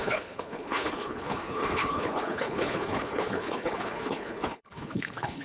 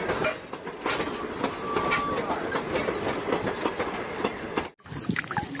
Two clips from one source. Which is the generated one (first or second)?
first